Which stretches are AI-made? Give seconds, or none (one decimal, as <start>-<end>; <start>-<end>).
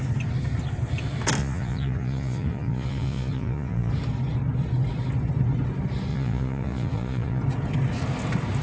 1.4-3.9; 6.1-7.4